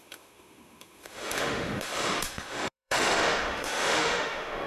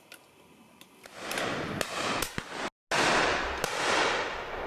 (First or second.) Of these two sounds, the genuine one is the second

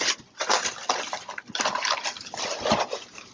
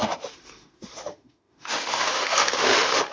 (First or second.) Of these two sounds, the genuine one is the first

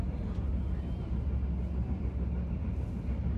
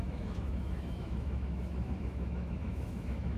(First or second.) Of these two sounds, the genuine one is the first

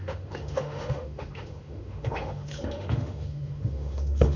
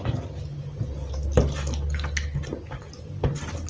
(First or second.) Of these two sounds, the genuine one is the second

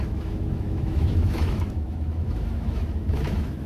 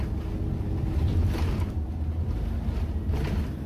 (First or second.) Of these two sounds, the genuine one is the second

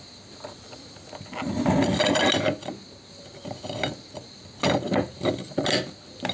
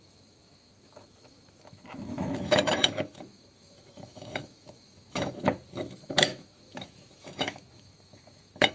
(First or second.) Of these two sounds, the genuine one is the first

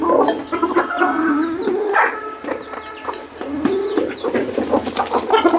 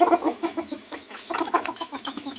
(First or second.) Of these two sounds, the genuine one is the first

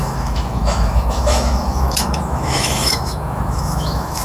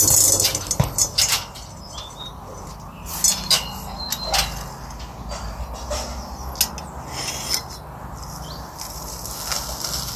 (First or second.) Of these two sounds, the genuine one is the second